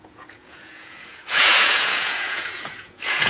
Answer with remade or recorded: remade